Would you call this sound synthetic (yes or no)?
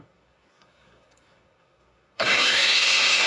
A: yes